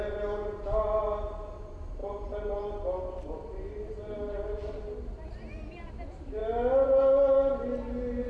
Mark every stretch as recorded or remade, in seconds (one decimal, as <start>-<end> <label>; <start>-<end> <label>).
0.0-2.0 recorded; 2.0-5.9 remade; 5.9-8.3 recorded